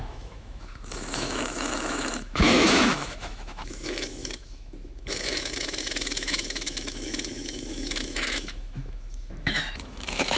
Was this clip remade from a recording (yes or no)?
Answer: yes